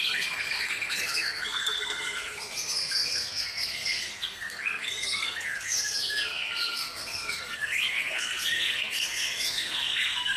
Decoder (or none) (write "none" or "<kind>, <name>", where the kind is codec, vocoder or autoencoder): codec, SNAC